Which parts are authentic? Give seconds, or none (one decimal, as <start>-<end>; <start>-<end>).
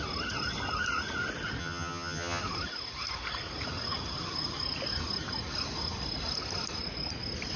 0.0-1.6; 2.4-7.6